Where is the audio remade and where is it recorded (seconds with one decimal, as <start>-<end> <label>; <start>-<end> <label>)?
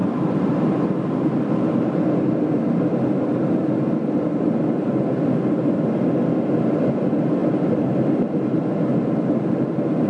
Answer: 0.0-10.1 recorded